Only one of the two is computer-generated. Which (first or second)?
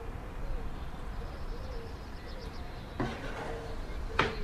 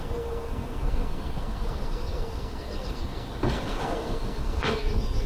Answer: second